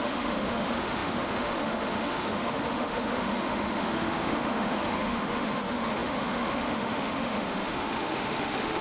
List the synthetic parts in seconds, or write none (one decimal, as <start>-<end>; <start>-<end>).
0.0-8.8